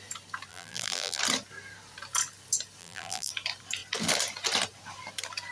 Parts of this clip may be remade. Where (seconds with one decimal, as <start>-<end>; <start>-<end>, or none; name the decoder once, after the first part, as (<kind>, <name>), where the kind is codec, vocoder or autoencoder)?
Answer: 0.5-1.2 (vocoder, BigVGAN v2); 2.8-3.3